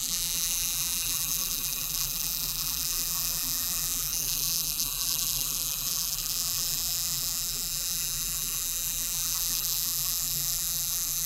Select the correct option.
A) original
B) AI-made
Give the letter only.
B